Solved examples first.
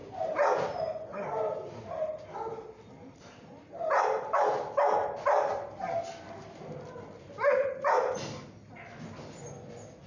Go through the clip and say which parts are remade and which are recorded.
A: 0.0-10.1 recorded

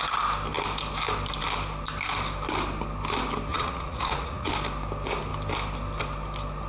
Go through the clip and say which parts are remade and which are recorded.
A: 0.0-3.5 recorded; 3.5-4.5 remade; 4.5-6.7 recorded

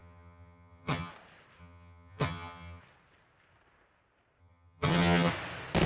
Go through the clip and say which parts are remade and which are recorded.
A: 0.0-1.1 remade; 1.1-1.6 recorded; 1.6-2.8 remade; 2.8-4.4 recorded; 4.4-5.3 remade; 5.3-5.9 recorded